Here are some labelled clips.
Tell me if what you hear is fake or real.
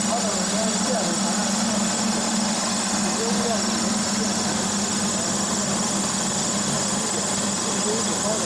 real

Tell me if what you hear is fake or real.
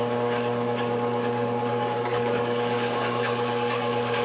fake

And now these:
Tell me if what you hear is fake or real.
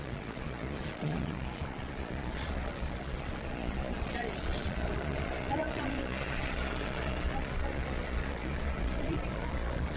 fake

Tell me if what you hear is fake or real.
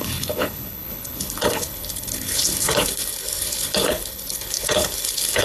fake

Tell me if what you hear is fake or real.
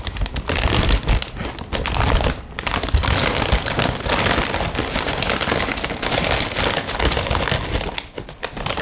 real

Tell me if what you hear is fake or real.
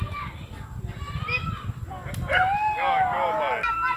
real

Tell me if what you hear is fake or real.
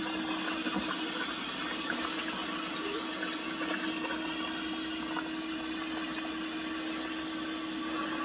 real